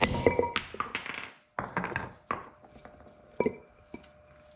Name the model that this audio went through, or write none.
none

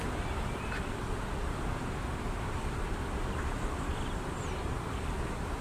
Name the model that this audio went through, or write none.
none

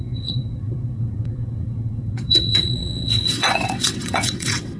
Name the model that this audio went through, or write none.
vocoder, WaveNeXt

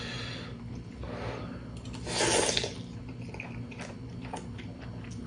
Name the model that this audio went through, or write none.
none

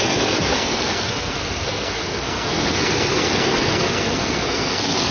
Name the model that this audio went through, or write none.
codec, SNAC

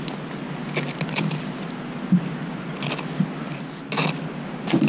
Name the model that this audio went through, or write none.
none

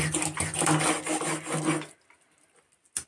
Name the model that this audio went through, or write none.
none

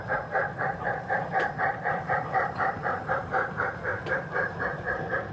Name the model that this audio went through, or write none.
vocoder, BigVGAN v2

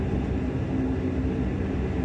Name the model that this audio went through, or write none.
none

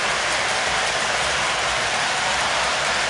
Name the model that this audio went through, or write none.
vocoder, BigVGAN v2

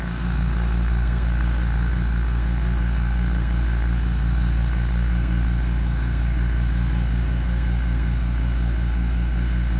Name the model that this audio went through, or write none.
codec, SNAC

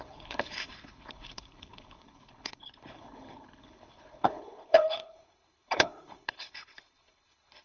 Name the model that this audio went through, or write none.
codec, HILCodec